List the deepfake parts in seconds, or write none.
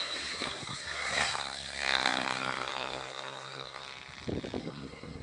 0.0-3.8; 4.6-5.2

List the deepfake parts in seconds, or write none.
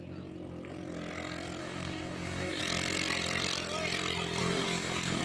1.6-2.6; 4.4-5.2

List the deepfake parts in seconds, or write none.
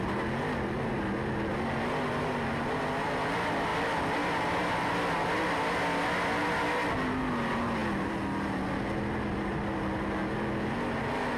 none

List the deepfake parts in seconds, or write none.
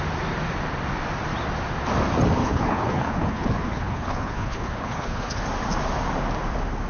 2.4-5.4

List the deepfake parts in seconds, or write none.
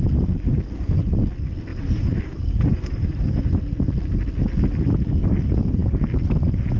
1.7-3.6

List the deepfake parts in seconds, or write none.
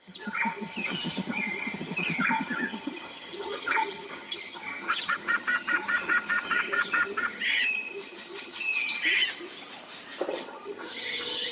0.0-9.2; 10.3-11.5